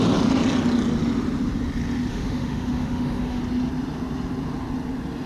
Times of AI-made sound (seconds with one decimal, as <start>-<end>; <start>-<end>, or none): 2.1-3.4